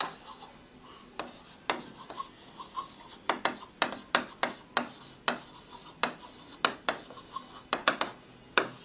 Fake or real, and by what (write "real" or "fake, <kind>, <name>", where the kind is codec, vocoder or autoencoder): real